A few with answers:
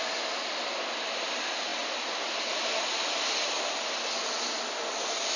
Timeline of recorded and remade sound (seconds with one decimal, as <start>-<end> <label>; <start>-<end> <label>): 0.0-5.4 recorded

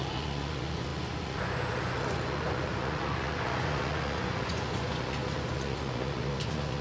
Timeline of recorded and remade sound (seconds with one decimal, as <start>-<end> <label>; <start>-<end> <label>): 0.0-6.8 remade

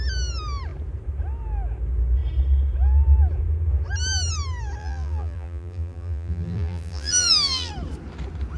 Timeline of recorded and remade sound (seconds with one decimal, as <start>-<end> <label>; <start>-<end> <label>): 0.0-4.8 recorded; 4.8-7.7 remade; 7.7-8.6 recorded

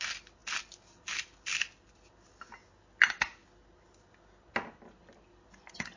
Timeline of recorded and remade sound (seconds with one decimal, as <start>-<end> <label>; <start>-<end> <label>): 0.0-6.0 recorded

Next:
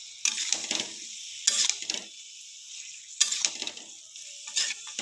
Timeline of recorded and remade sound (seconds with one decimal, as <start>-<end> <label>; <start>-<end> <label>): 0.0-5.0 recorded

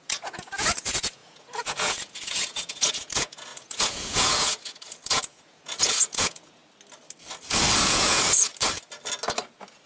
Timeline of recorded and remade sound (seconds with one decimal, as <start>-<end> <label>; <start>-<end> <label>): 0.0-6.6 remade; 6.6-7.8 recorded; 7.8-8.5 remade; 8.5-9.9 recorded

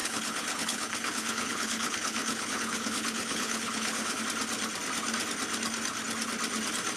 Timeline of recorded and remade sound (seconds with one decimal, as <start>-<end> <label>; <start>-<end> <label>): 0.0-4.2 remade; 4.2-7.0 recorded